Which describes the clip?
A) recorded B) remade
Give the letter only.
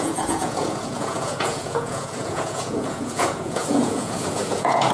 B